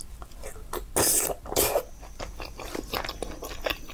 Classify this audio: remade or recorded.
recorded